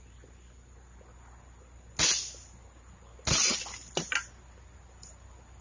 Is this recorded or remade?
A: recorded